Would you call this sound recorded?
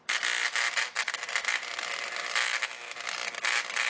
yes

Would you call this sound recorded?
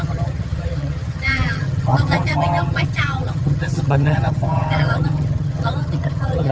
no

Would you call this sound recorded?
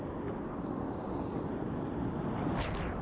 yes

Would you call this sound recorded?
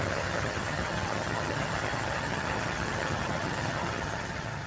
no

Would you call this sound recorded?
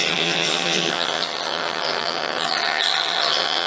no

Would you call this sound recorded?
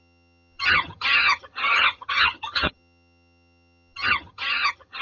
no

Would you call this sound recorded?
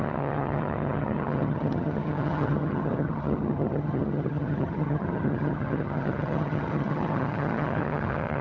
no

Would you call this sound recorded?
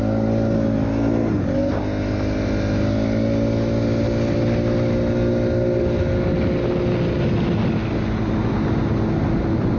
yes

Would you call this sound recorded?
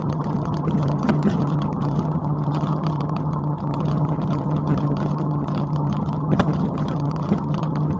no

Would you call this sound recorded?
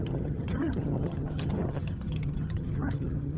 no